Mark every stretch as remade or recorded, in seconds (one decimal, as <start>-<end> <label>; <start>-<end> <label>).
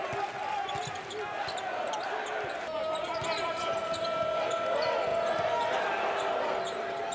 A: 0.0-7.1 recorded